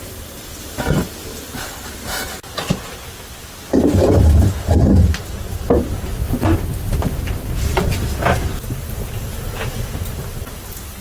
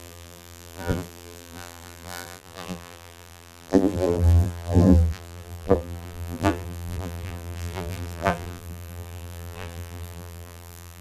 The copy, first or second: second